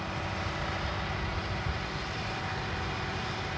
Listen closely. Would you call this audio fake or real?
real